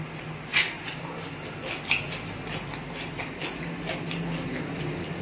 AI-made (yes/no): no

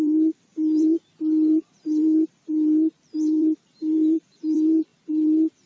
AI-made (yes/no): yes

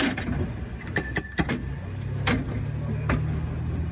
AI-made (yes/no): no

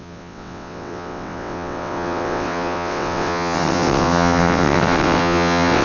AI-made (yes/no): yes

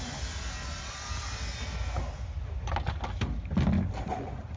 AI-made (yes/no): no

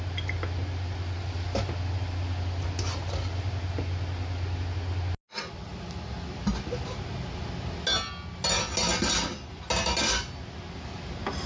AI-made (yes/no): no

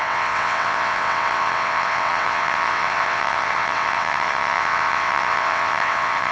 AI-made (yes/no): yes